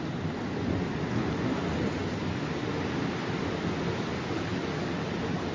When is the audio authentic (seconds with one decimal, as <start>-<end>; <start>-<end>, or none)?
0.0-5.5